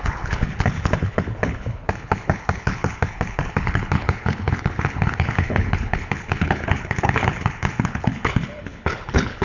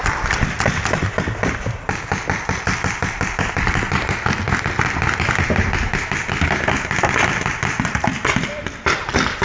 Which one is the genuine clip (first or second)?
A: second